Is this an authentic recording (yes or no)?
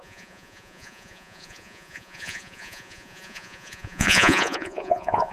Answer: no